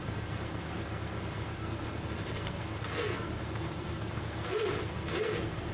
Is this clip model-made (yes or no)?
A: yes